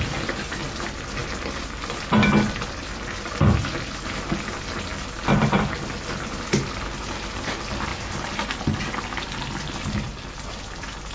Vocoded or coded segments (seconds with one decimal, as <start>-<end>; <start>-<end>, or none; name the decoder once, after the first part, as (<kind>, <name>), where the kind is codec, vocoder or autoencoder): 0.0-1.2 (vocoder, BigVGAN v2); 4.1-11.1